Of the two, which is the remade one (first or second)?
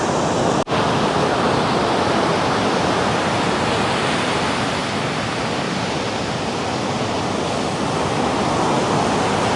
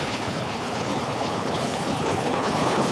second